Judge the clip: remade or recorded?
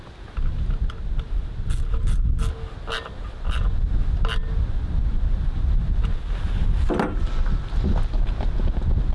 recorded